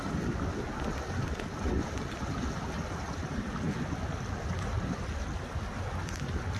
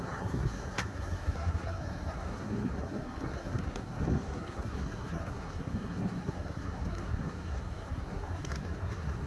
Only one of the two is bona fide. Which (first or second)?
first